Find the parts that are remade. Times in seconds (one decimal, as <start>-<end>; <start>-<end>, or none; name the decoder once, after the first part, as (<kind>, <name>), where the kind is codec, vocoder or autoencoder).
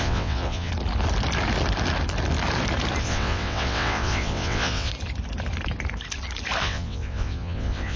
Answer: 0.0-0.7 (vocoder, WaveNeXt); 3.0-4.9; 6.6-8.0